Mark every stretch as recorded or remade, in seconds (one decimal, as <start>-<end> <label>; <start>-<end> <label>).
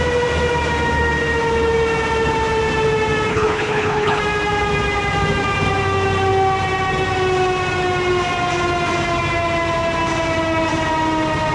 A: 0.0-3.3 recorded; 3.3-4.2 remade; 4.2-11.5 recorded